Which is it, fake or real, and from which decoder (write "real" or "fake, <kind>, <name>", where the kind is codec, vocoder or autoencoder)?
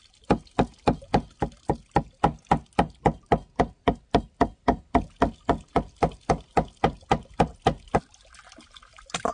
real